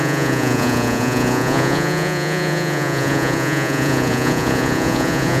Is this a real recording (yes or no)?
no